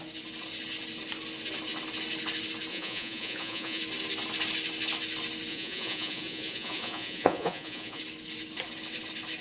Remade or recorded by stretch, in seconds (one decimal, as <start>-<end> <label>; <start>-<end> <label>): 0.0-2.7 recorded; 2.7-3.8 remade; 3.8-5.5 recorded; 5.5-8.0 remade; 8.0-9.4 recorded